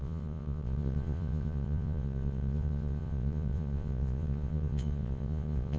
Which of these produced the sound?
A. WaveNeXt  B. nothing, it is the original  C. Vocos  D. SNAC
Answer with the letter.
C